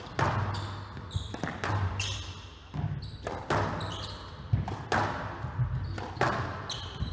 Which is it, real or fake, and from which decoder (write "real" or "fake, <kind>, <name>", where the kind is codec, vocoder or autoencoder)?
real